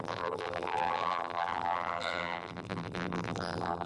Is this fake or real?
fake